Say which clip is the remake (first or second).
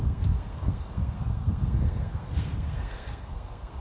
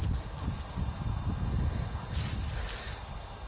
first